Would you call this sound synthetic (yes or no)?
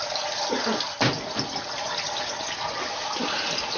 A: no